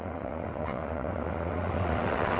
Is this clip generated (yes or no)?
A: yes